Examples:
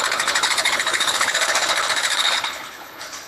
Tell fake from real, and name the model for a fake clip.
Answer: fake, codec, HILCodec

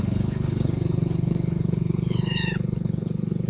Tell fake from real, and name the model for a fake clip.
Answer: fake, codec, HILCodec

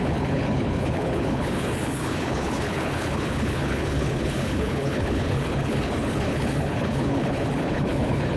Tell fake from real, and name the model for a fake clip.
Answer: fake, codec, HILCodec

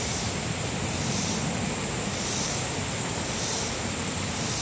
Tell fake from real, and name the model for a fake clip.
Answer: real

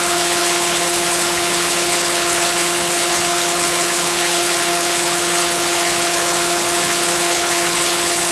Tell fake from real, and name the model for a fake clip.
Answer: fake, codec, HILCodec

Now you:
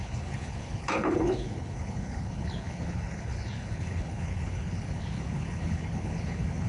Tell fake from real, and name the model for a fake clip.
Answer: fake, codec, HILCodec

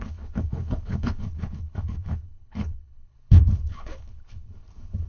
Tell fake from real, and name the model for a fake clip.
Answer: fake, codec, HILCodec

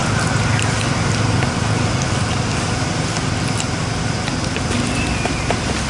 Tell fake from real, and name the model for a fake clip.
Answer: real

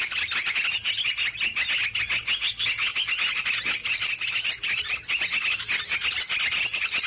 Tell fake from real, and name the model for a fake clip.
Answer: real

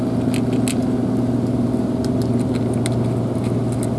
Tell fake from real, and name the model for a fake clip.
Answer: real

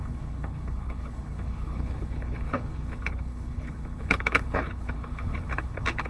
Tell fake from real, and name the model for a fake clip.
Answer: fake, codec, HILCodec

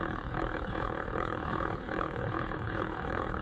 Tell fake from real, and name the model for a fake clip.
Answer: fake, codec, HILCodec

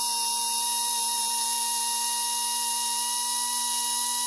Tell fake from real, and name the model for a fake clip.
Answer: real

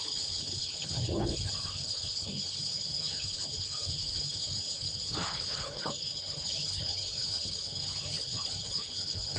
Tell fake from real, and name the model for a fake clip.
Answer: fake, codec, HILCodec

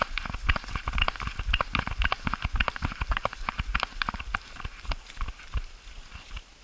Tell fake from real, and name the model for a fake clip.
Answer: real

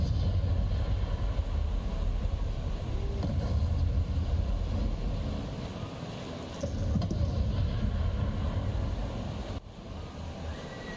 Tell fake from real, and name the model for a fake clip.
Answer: real